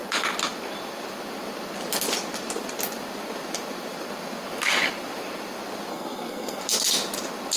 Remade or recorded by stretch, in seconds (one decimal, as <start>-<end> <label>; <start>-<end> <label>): 0.0-5.9 recorded; 5.9-6.6 remade; 6.6-7.6 recorded